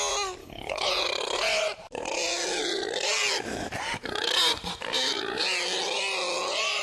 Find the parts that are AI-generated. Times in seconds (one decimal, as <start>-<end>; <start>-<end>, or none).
0.4-0.9